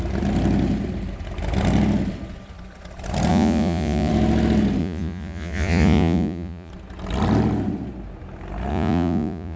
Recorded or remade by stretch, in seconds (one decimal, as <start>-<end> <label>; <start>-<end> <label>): 0.0-3.3 recorded; 3.3-4.1 remade; 4.1-4.8 recorded; 4.8-6.7 remade; 6.7-8.7 recorded; 8.7-9.6 remade

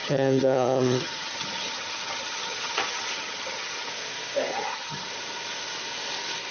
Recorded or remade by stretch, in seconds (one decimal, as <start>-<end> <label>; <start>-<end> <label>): 0.0-3.9 remade; 3.9-4.5 recorded; 4.5-5.1 remade; 5.1-6.5 recorded

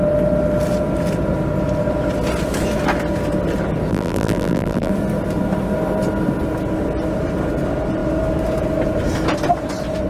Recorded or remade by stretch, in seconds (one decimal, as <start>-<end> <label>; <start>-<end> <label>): 0.0-3.9 recorded; 3.9-4.9 remade; 4.9-10.1 recorded

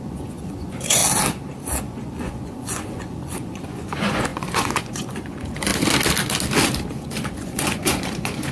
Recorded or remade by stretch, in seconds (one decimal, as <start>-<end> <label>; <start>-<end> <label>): 0.0-1.0 remade; 1.0-1.8 recorded; 1.8-5.7 remade; 5.7-6.9 recorded; 6.9-8.5 remade